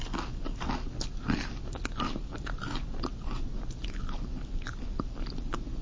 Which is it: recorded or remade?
recorded